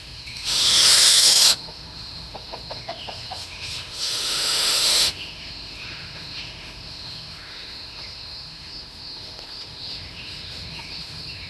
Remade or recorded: remade